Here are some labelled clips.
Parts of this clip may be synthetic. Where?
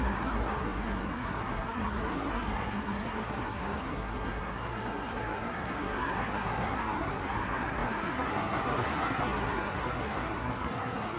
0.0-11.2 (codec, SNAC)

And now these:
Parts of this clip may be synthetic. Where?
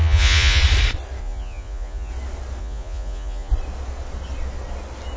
0.0-0.6 (vocoder, Vocos); 1.2-2.1; 2.6-3.5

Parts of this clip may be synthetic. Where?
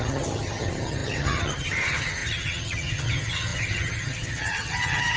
0.0-5.2 (vocoder, HiFi-GAN)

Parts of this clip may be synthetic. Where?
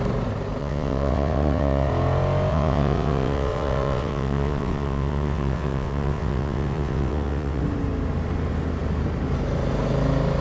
0.6-1.9 (vocoder, WaveNeXt); 2.5-7.6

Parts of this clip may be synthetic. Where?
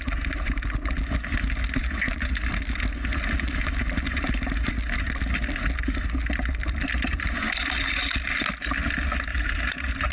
1.8-2.5 (vocoder, BigVGAN v2); 3.8-4.7; 9.3-10.1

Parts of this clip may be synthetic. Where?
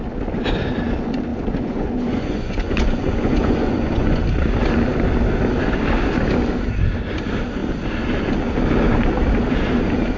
1.3-4.2 (vocoder, Vocos)